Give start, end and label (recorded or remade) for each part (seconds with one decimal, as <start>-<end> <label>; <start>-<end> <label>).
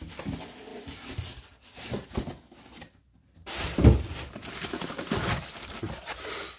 0.0-6.6 recorded